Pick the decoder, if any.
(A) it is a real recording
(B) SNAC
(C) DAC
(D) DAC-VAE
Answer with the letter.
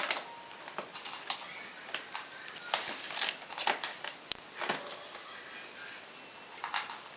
A